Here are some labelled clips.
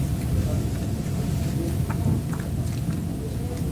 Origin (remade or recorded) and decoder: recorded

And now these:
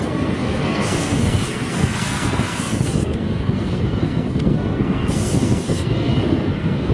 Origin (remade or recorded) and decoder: remade, codec, SNAC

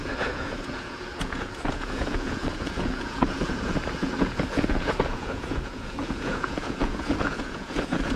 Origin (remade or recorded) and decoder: remade, vocoder, Vocos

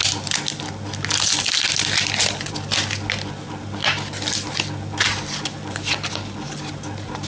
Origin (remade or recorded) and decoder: recorded